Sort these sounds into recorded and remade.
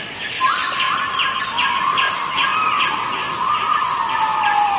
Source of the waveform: recorded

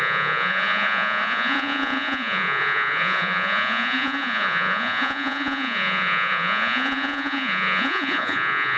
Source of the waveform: remade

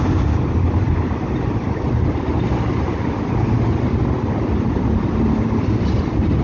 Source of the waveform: recorded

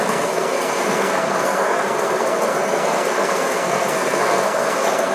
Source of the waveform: remade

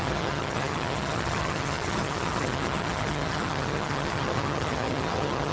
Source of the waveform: remade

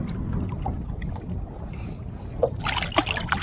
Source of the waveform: recorded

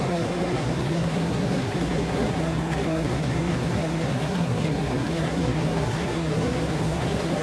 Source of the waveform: remade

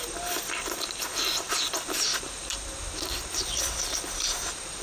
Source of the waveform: recorded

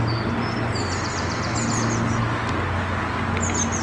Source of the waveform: recorded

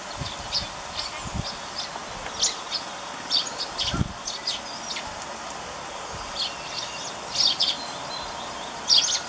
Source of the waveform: recorded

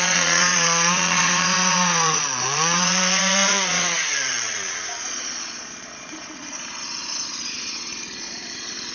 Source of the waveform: remade